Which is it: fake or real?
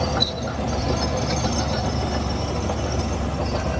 real